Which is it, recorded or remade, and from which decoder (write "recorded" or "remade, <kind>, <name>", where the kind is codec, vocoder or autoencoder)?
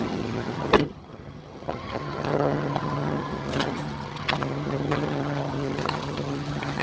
remade, vocoder, HiFi-GAN